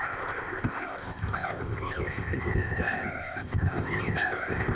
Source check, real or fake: fake